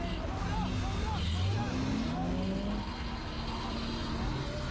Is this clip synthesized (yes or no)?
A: no